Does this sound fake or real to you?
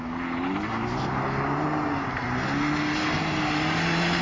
real